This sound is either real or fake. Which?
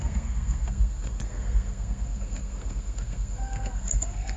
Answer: fake